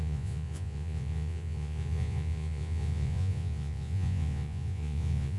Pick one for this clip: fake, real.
fake